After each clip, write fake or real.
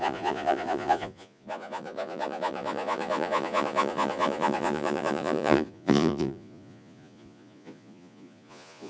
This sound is fake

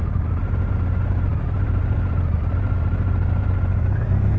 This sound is real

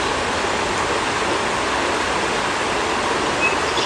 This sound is real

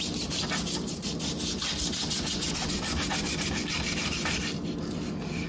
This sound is real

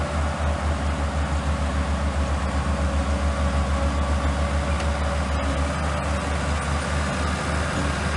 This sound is real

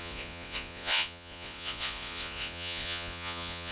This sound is fake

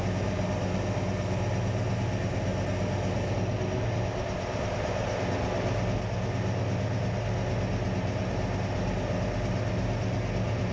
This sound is real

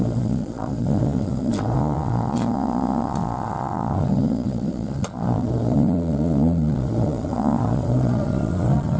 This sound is fake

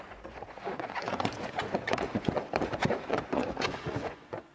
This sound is fake